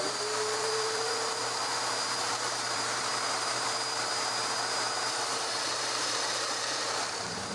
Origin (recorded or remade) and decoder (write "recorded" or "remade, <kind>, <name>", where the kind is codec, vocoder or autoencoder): remade, vocoder, BigVGAN v2